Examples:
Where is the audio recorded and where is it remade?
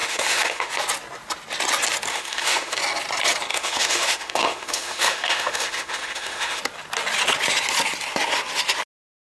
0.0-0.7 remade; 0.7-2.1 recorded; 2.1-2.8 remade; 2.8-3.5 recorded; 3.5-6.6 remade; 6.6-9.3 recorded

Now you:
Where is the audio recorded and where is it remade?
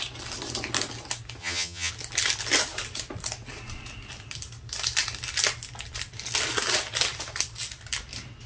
0.0-1.4 recorded; 1.4-1.9 remade; 1.9-8.5 recorded